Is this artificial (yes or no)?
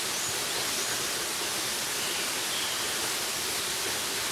yes